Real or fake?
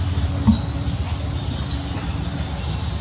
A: real